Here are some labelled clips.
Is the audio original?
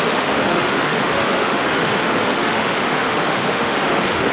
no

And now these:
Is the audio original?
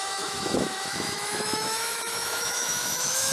no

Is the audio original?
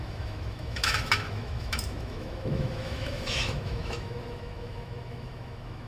no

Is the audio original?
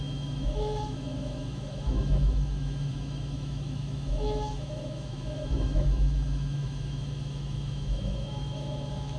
no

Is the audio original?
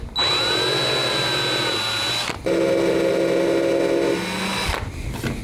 yes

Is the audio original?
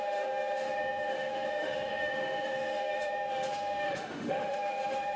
no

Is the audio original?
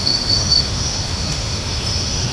no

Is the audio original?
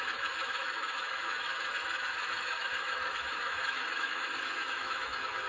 no